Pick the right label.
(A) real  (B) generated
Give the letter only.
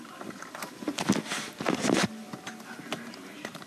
B